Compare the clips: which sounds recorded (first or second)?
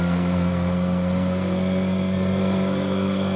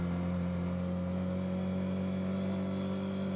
second